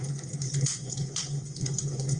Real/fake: fake